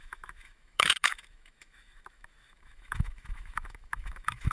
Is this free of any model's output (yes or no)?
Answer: no